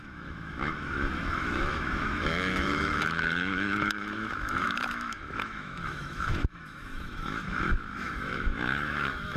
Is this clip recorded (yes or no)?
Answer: no